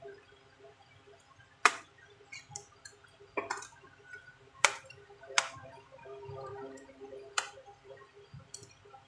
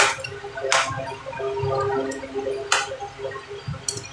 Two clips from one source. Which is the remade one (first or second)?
first